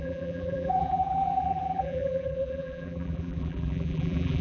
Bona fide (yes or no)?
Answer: no